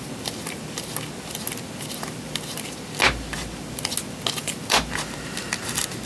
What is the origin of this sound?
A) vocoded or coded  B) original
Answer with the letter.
B